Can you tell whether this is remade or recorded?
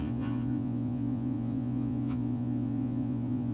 remade